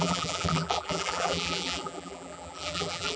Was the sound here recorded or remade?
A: remade